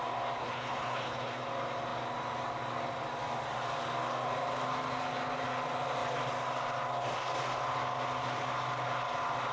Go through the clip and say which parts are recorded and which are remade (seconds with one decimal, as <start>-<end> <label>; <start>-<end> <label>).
0.0-0.4 recorded; 0.4-1.4 remade; 1.4-9.5 recorded